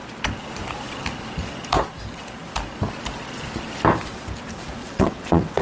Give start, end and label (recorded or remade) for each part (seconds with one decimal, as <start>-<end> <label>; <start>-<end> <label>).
0.0-4.8 recorded; 4.8-5.6 remade

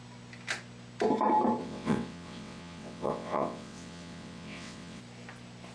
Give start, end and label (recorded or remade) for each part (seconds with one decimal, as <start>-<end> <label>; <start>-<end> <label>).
0.0-1.6 recorded; 1.6-5.0 remade; 5.0-5.7 recorded

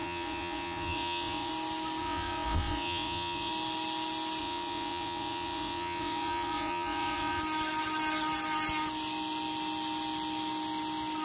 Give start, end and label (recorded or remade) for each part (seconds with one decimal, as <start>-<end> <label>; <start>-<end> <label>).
0.0-1.5 remade; 1.5-2.0 recorded; 2.0-3.5 remade; 3.5-4.4 recorded; 4.4-7.4 remade; 7.4-11.2 recorded

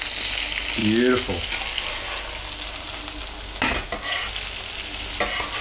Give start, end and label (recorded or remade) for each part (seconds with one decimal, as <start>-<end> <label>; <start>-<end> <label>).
0.0-5.6 recorded

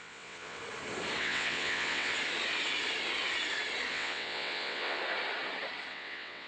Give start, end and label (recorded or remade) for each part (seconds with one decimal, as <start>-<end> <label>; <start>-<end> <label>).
0.0-0.6 remade; 0.6-1.2 recorded; 1.2-2.1 remade; 2.1-3.9 recorded; 3.9-5.0 remade; 5.0-5.9 recorded; 5.9-6.5 remade

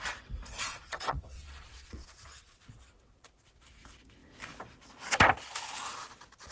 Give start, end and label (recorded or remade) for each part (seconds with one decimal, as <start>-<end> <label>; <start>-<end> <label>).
0.0-0.7 recorded; 0.7-3.6 remade; 3.6-6.5 recorded

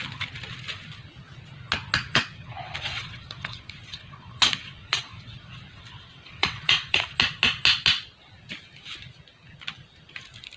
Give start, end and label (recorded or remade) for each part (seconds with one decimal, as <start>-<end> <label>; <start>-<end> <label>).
0.0-2.1 recorded; 2.1-7.2 remade; 7.2-10.6 recorded

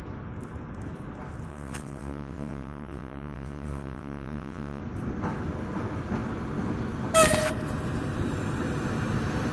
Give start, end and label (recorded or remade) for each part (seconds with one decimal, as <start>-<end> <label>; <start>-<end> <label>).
0.0-1.5 recorded; 1.5-4.8 remade; 4.8-9.5 recorded